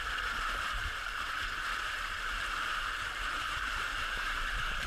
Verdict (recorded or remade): remade